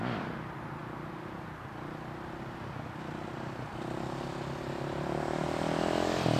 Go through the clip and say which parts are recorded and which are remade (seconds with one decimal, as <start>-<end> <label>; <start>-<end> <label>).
0.0-6.4 recorded